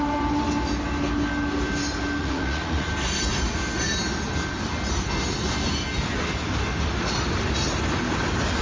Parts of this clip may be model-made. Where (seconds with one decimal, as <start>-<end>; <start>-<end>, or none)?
2.2-2.9